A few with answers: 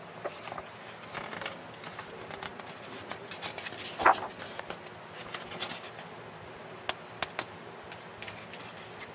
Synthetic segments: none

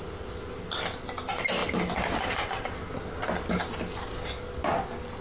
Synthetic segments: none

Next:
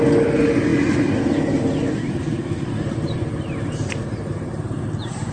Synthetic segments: none

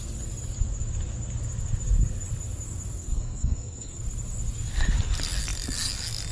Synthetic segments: 3.0-4.0 (codec, SNAC)